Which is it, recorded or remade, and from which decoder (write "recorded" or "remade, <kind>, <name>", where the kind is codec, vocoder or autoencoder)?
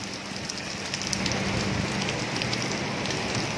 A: recorded